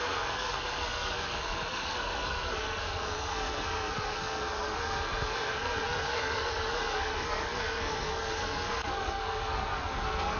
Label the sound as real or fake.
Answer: fake